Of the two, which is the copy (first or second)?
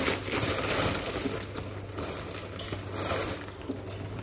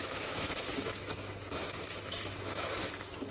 second